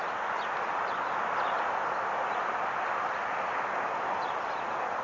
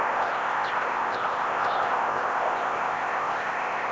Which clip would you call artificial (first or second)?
second